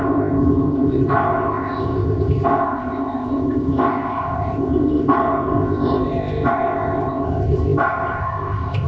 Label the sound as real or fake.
fake